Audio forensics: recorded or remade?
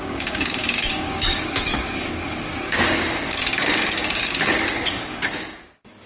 remade